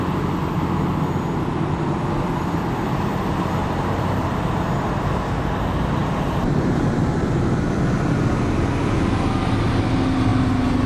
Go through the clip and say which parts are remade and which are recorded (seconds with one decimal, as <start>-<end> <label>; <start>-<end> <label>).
0.0-3.6 recorded; 3.6-4.5 remade; 4.5-6.0 recorded; 6.0-7.3 remade; 7.3-10.9 recorded